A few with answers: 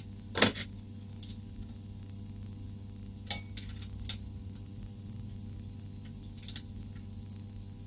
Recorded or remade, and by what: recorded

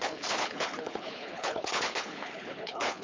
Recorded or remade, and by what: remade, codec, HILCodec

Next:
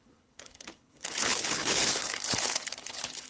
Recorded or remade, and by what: remade, codec, HILCodec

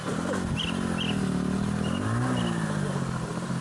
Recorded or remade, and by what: recorded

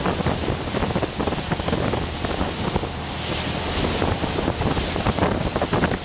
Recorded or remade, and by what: recorded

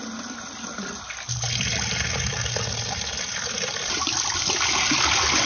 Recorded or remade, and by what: recorded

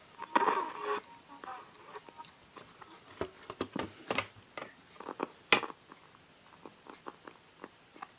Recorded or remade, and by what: recorded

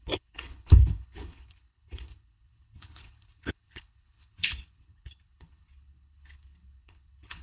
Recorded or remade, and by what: remade, codec, HILCodec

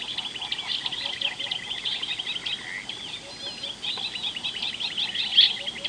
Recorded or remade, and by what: recorded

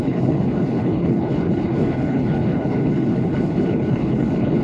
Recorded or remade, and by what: remade, codec, HILCodec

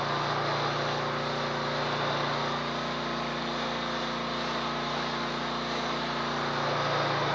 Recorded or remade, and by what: recorded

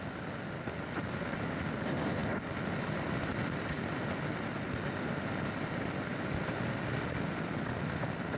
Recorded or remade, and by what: recorded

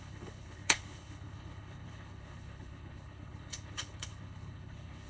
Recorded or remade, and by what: remade, codec, HILCodec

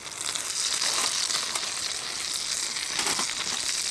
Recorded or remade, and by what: recorded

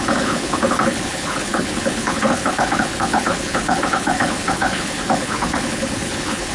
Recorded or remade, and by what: remade, codec, HILCodec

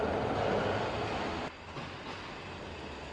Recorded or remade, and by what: recorded